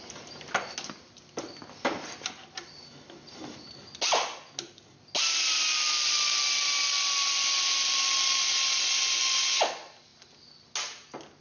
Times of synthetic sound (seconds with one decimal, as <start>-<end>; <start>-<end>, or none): none